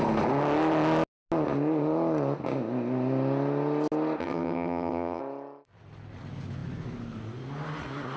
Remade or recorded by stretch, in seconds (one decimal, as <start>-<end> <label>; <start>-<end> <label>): 0.0-4.2 recorded; 4.2-5.2 remade; 5.2-8.2 recorded